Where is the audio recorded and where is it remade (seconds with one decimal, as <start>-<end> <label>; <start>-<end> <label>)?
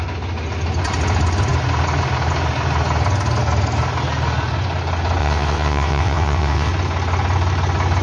0.0-5.2 recorded; 5.2-6.7 remade; 6.7-8.0 recorded